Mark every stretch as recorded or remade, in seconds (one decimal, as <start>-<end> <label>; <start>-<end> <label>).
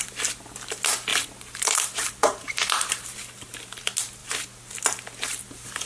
0.0-1.1 recorded; 1.1-3.8 remade; 3.8-5.9 recorded